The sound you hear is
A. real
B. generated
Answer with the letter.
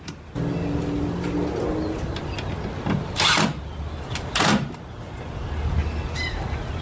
A